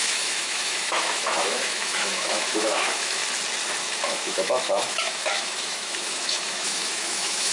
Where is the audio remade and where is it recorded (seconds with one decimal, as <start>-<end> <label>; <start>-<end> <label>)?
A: 0.0-3.2 remade; 3.2-3.8 recorded; 3.8-7.5 remade